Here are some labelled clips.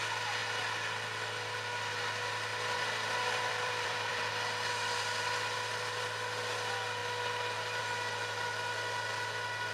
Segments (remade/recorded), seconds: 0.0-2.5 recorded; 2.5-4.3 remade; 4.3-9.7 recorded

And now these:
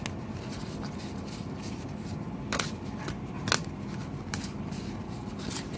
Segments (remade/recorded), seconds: 0.0-5.8 recorded

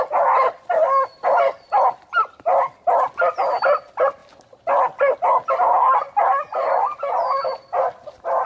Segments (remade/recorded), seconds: 0.0-8.5 recorded

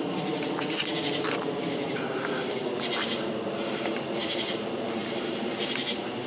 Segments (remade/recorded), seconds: 0.0-6.3 recorded

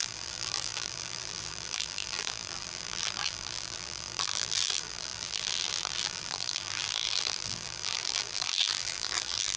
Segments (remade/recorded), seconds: 0.0-9.6 remade